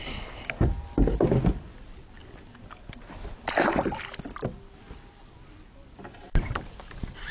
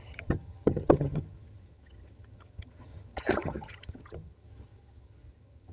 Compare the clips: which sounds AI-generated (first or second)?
second